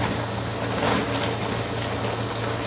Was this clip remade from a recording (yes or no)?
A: no